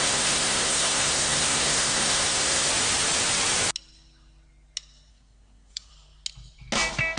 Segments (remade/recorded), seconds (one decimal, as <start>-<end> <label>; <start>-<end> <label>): 0.0-2.7 remade; 2.7-5.1 recorded; 5.1-5.9 remade; 5.9-7.2 recorded